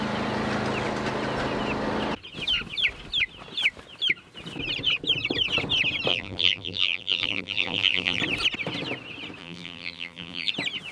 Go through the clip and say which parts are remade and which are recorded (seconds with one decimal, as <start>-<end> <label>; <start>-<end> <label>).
0.0-6.1 recorded; 6.1-8.2 remade; 8.2-9.4 recorded; 9.4-10.5 remade; 10.5-10.9 recorded